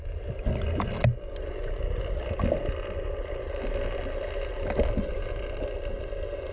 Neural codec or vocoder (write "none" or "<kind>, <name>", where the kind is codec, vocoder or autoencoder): none